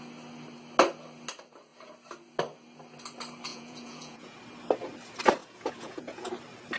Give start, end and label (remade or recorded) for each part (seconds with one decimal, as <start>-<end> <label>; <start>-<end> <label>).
0.0-3.5 recorded; 3.5-4.4 remade; 4.4-5.4 recorded; 5.4-6.3 remade; 6.3-6.8 recorded